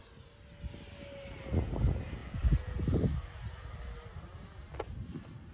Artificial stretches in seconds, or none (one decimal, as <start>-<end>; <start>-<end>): none